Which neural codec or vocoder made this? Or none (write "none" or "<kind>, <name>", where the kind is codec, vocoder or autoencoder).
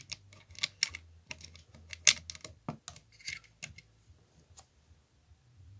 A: none